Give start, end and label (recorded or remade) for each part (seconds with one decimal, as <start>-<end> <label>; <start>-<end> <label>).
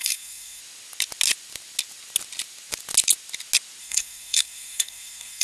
0.0-0.6 remade; 0.6-3.8 recorded; 3.8-5.4 remade